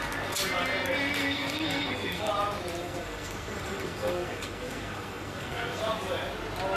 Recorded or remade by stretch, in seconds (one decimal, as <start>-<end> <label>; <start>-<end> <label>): 0.0-1.2 recorded; 1.2-2.3 remade; 2.3-2.8 recorded; 2.8-5.8 remade; 5.8-6.8 recorded